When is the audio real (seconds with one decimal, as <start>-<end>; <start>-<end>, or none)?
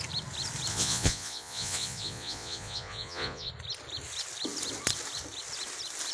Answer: 0.0-0.7; 3.5-6.1